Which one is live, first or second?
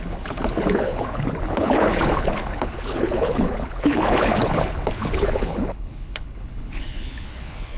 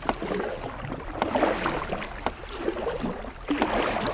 second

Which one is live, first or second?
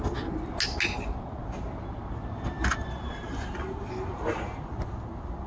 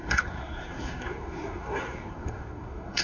first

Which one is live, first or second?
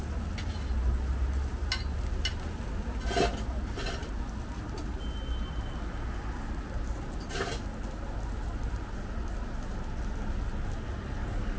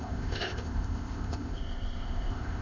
first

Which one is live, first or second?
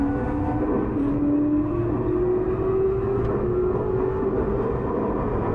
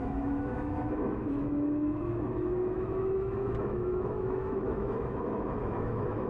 first